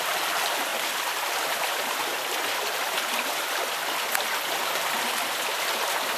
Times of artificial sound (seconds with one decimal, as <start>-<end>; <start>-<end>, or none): 0.0-6.2